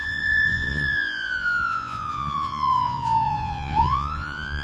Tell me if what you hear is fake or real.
fake